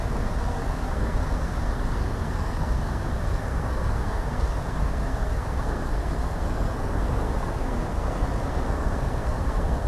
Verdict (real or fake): fake